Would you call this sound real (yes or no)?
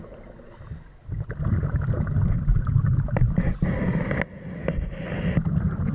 yes